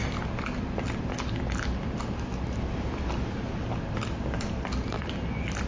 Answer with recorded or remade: recorded